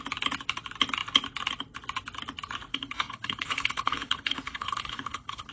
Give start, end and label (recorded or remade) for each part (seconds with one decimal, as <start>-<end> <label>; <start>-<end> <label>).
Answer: 0.0-2.7 recorded; 2.7-5.5 remade

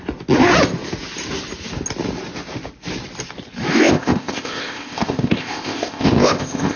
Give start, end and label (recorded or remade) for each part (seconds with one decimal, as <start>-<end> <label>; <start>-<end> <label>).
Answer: 0.0-3.7 recorded; 3.7-6.8 remade